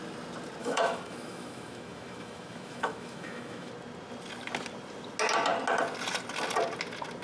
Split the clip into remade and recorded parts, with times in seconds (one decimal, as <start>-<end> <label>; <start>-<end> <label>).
0.0-0.6 recorded; 0.6-3.7 remade; 3.7-7.2 recorded